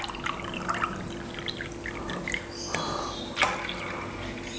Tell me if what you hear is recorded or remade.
recorded